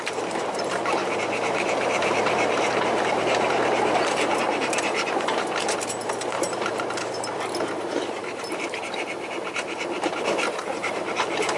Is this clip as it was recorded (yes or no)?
no